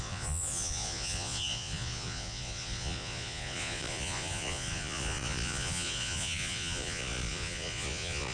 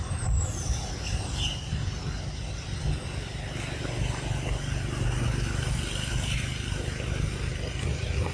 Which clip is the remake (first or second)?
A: first